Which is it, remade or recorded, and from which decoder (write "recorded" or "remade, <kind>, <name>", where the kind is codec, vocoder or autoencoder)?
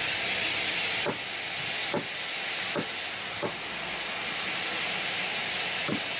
recorded